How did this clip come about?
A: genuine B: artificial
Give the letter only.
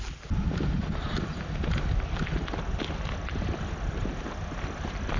A